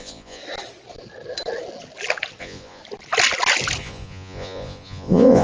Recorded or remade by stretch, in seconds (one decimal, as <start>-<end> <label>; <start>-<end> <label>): 0.0-0.4 remade; 0.4-2.4 recorded; 2.4-2.8 remade; 2.8-3.8 recorded; 3.8-5.4 remade